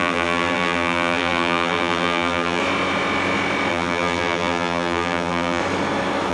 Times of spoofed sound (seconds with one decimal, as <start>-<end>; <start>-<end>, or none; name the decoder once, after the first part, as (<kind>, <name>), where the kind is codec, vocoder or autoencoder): 0.0-2.6 (vocoder, BigVGAN v2); 3.7-5.6